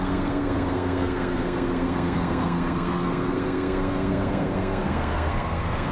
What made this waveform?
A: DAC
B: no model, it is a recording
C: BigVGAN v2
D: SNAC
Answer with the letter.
D